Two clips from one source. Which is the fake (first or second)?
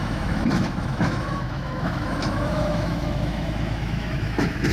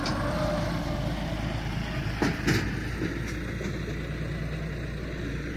first